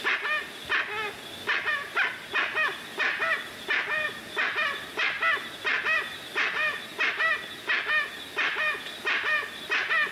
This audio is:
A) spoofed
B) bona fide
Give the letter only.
B